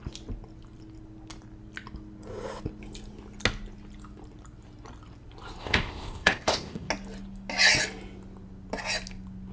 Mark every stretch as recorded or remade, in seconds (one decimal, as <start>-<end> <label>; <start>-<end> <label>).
0.0-5.6 recorded; 5.6-6.9 remade; 6.9-9.5 recorded